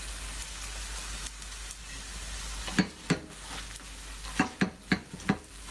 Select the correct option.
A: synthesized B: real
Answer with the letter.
B